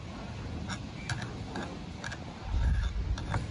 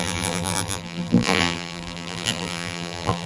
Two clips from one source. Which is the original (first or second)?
first